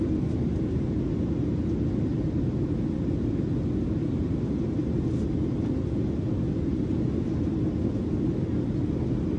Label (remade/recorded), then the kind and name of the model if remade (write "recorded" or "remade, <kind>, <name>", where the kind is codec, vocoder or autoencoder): recorded